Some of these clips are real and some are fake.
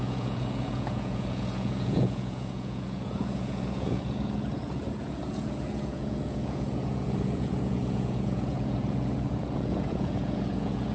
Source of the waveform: fake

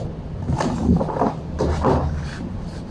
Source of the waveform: real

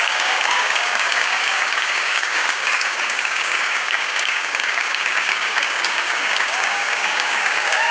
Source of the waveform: fake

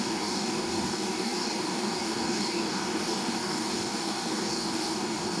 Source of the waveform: fake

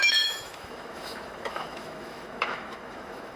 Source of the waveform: fake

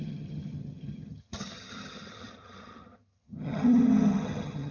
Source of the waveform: fake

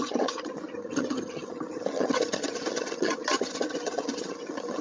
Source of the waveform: fake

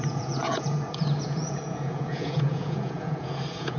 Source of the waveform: fake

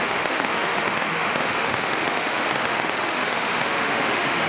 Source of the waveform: fake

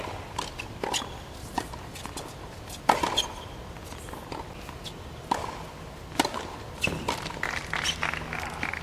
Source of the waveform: real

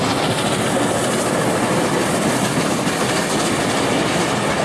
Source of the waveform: real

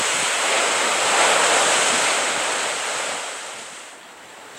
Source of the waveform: real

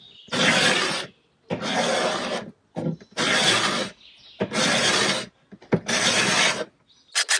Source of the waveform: real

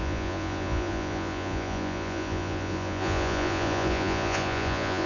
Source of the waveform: fake